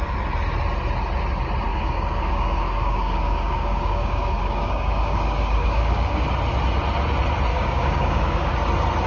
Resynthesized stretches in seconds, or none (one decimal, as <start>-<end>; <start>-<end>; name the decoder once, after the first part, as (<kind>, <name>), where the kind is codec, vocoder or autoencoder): 1.7-6.2 (codec, DAC); 7.5-8.5